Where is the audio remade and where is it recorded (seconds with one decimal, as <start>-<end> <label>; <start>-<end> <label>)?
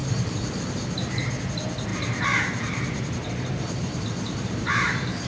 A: 0.0-1.9 recorded; 1.9-5.3 remade